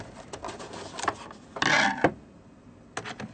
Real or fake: real